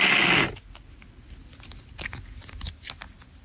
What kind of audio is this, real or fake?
real